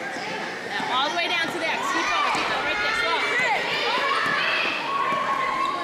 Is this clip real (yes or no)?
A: yes